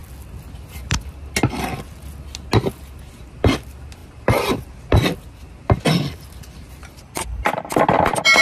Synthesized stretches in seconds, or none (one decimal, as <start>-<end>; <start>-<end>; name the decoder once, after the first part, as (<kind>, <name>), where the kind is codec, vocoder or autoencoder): 6.8-7.7 (vocoder, BigVGAN v2)